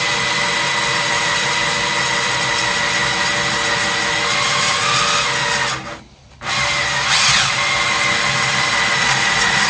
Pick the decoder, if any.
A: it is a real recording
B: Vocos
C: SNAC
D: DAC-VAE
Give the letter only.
A